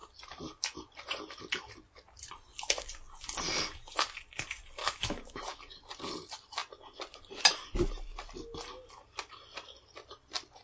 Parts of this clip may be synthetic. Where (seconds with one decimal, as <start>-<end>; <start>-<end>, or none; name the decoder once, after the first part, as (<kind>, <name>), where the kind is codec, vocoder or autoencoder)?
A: 4.8-5.4 (autoencoder, DAC-VAE)